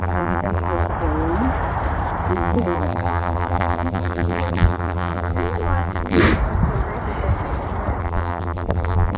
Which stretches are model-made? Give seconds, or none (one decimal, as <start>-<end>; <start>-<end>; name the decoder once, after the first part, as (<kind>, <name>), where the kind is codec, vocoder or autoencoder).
0.0-0.9 (vocoder, BigVGAN v2); 2.3-6.2; 8.0-9.2